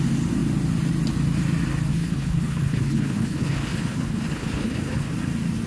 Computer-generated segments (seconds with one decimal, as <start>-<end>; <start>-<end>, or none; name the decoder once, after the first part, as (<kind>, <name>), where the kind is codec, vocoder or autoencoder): 1.9-5.1 (codec, HILCodec)

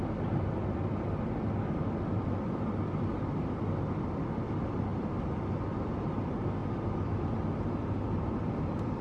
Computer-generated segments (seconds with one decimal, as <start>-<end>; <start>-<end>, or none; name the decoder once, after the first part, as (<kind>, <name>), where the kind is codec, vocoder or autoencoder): none

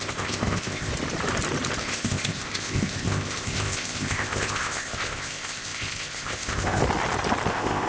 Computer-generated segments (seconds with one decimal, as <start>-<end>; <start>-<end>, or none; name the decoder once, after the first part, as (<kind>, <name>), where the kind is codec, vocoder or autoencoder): 0.0-0.9 (codec, ZipCodec); 1.8-6.8; 7.5-7.9

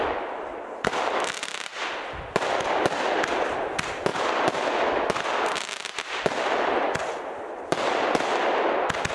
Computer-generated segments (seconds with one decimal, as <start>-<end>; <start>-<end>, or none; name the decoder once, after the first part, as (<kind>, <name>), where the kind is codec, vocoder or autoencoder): none

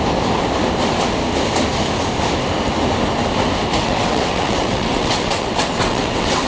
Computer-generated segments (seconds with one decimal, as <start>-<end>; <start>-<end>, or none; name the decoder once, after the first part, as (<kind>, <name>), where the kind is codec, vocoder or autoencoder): 3.8-6.5 (vocoder, WaveNeXt)

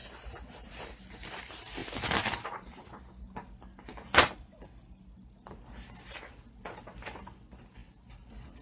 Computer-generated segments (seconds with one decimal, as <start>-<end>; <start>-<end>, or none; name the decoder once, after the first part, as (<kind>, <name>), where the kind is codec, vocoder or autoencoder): none

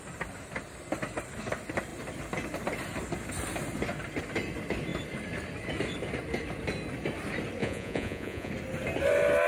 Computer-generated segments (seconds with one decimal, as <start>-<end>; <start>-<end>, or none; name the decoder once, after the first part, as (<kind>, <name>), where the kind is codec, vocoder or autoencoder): 7.6-8.5 (vocoder, Vocos)

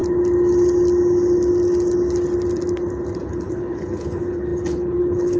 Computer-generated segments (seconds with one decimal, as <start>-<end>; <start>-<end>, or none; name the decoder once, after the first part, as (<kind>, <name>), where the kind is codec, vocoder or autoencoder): 3.2-5.4 (codec, HILCodec)